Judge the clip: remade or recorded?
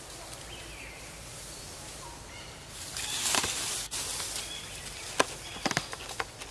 recorded